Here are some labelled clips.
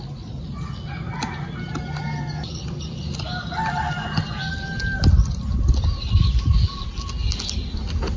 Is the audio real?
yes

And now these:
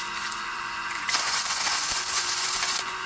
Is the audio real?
no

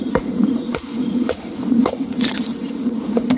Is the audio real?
no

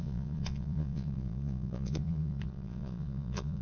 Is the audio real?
no